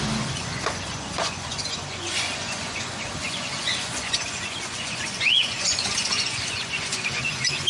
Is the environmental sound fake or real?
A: fake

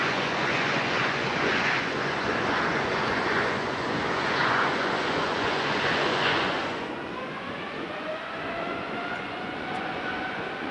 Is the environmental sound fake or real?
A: fake